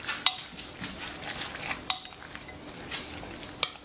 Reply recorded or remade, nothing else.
recorded